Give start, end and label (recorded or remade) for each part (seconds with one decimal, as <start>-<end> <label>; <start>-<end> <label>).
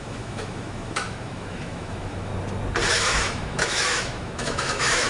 0.0-2.3 remade; 2.3-2.9 recorded; 2.9-5.1 remade